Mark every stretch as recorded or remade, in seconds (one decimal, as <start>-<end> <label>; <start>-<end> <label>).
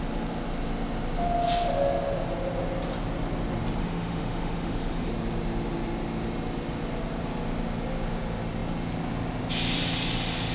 0.0-3.8 recorded; 3.8-5.1 remade; 5.1-10.5 recorded